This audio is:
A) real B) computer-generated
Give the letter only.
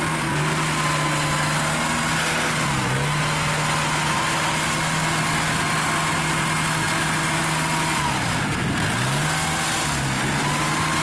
A